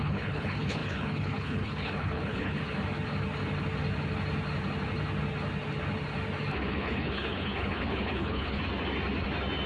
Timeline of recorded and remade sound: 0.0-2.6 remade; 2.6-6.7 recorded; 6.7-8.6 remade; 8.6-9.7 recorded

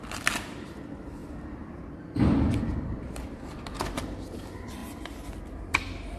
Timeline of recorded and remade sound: 0.0-4.8 remade; 4.8-5.4 recorded; 5.4-6.2 remade

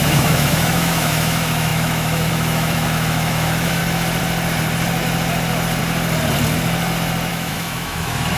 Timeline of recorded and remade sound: 0.0-3.8 remade; 3.8-7.3 recorded; 7.3-8.4 remade

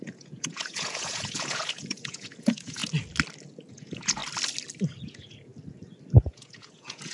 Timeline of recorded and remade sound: 0.0-2.8 remade; 2.8-3.7 recorded; 3.7-4.2 remade; 4.2-5.0 recorded; 5.0-5.5 remade; 5.5-6.2 recorded; 6.2-7.1 remade

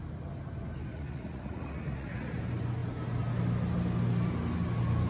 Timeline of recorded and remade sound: 0.0-0.9 recorded; 0.9-2.4 remade; 2.4-5.1 recorded

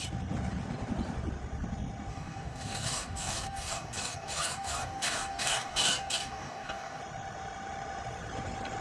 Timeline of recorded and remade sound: 0.0-2.1 recorded; 2.1-7.0 remade; 7.0-8.8 recorded

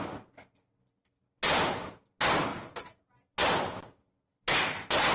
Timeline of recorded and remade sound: 0.0-5.1 recorded

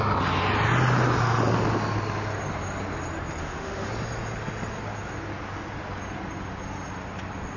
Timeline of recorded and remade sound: 0.0-3.4 recorded; 3.4-3.9 remade; 3.9-7.6 recorded